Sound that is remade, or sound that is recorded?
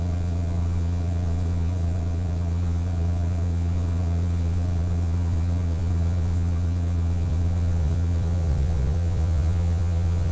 remade